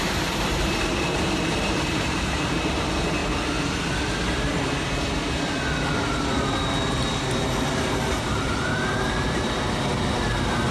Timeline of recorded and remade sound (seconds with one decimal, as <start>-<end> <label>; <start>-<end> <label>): 0.0-3.2 remade; 3.2-7.9 recorded; 7.9-10.7 remade